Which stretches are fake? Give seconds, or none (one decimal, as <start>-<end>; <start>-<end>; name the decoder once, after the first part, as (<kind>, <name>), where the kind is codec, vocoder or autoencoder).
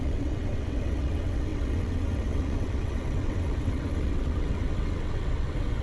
0.0-5.8 (vocoder, WaveNeXt)